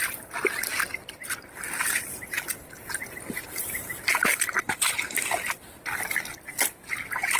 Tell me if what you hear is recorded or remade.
recorded